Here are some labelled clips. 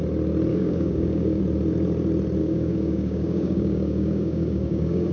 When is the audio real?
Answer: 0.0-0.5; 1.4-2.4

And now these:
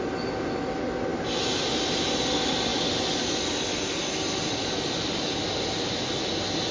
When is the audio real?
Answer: 0.0-6.7